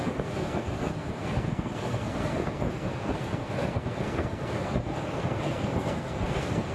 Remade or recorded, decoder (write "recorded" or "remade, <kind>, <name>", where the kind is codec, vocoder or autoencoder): remade, codec, SNAC